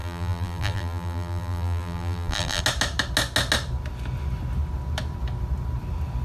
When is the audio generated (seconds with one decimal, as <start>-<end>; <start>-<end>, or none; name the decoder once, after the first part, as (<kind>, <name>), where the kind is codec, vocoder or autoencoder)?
0.0-2.6 (vocoder, BigVGAN v2)